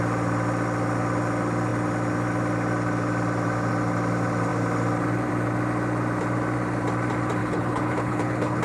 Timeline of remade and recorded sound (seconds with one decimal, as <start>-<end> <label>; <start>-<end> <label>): 0.0-7.4 recorded; 7.4-8.6 remade

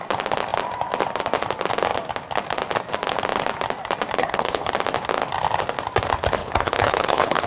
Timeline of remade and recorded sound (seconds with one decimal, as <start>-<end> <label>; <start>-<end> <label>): 0.0-4.2 recorded; 4.2-4.7 remade; 4.7-6.4 recorded; 6.4-7.5 remade

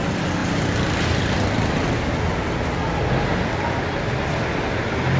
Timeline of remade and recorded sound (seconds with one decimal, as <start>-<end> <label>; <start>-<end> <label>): 0.0-5.2 recorded